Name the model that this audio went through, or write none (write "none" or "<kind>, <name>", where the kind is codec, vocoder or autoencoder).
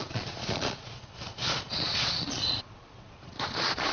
vocoder, Vocos